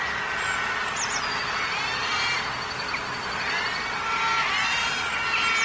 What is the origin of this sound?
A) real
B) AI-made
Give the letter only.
A